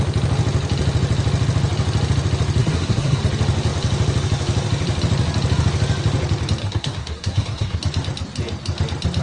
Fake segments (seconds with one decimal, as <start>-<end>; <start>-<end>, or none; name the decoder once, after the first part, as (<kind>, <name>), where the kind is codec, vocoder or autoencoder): 2.6-3.2 (codec, SNAC); 6.6-7.8